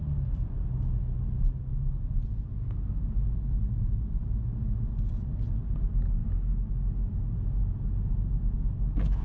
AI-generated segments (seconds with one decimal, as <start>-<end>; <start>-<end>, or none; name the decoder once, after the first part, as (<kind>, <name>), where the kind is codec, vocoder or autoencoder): none

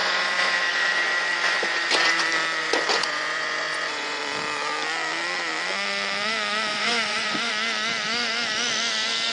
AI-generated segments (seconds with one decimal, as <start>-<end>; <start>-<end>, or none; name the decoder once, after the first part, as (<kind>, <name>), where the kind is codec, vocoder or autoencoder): 0.0-2.2 (vocoder, Vocos); 2.6-4.2; 6.7-7.5